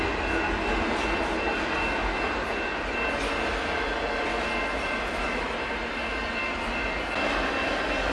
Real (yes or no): yes